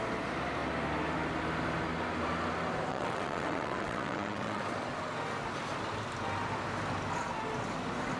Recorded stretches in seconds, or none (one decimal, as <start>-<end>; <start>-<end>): 0.0-2.9; 4.6-8.2